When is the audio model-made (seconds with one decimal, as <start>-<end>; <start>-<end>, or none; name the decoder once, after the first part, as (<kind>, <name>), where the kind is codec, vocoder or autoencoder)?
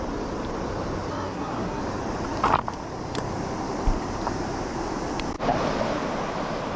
1.1-1.8 (codec, SNAC)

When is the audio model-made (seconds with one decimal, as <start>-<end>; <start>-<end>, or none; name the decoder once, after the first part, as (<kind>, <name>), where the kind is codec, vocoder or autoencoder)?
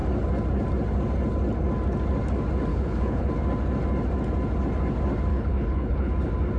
2.7-3.3 (codec, HILCodec); 5.3-6.1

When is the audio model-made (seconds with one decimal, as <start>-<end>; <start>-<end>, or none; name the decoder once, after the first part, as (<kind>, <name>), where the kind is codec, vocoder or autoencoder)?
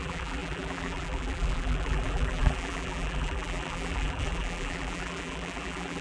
0.0-6.0 (vocoder, BigVGAN v2)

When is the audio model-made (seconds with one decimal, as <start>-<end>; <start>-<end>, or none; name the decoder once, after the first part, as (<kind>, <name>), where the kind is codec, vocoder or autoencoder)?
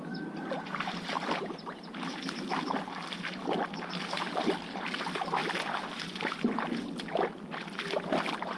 none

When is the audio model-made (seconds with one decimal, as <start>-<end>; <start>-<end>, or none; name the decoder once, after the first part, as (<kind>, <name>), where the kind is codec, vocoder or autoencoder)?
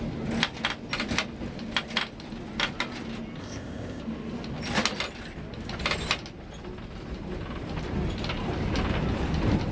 3.4-4.0 (codec, ZipCodec)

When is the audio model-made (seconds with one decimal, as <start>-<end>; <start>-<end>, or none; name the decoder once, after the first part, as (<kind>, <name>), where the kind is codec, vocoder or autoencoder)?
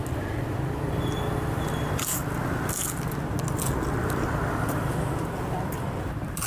1.5-2.2 (vocoder, BigVGAN v2); 6.1-6.5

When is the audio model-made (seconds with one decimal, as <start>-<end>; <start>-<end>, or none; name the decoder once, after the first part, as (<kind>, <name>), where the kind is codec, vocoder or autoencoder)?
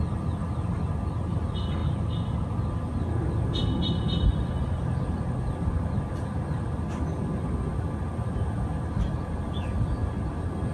4.6-5.1 (vocoder, BigVGAN v2)